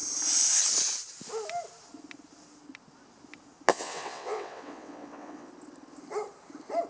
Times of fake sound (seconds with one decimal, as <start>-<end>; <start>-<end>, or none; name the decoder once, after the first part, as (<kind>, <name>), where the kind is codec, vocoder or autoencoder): 3.7-5.5 (vocoder, WaveNeXt)